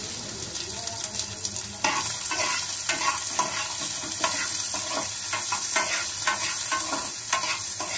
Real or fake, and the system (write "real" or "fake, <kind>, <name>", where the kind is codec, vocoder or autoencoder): real